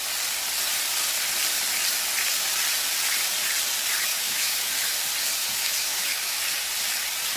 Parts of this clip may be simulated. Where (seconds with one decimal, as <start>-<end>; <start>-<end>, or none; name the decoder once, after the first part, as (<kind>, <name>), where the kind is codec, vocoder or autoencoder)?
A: 4.1-4.7 (autoencoder, DAC-VAE); 5.4-6.4

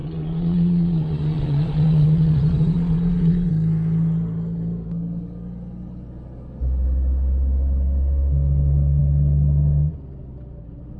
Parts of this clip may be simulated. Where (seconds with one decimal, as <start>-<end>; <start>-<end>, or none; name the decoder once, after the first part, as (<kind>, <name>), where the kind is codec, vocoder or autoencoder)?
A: 0.0-3.5 (vocoder, Vocos)

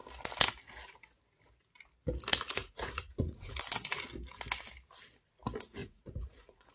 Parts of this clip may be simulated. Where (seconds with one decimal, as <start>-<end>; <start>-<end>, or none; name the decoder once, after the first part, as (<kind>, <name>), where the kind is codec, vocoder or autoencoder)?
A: 2.3-3.6 (vocoder, Vocos); 5.8-6.7

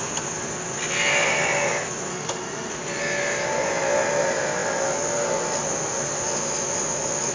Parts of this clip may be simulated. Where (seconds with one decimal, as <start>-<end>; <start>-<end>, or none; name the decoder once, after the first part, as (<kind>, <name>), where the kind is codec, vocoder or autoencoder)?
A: 2.1-2.7 (autoencoder, DAC-VAE)

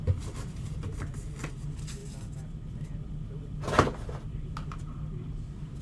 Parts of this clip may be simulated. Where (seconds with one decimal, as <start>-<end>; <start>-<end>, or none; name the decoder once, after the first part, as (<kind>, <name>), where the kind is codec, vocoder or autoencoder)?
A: none

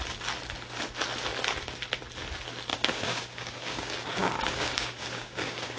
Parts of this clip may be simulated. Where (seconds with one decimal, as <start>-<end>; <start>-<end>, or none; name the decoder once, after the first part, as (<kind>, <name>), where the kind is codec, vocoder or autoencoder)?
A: 2.7-5.8 (codec, DAC)